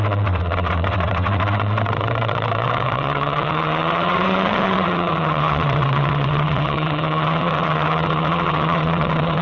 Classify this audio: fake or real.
fake